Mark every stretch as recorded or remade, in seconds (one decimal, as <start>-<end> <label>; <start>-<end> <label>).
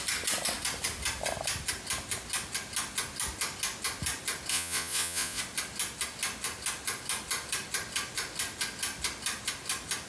0.0-4.5 recorded; 4.5-5.4 remade; 5.4-10.1 recorded